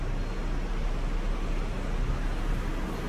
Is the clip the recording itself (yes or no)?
yes